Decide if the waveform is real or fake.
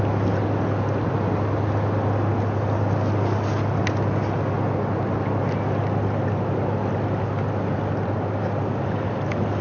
real